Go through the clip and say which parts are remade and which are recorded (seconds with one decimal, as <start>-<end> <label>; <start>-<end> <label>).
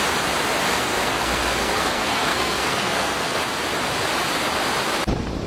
0.0-0.7 recorded; 0.7-3.4 remade; 3.4-5.5 recorded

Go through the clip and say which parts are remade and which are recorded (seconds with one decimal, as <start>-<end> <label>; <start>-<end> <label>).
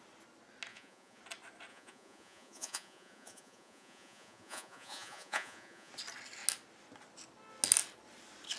0.0-0.7 recorded; 0.7-1.2 remade; 1.2-1.7 recorded; 1.7-5.9 remade; 5.9-8.6 recorded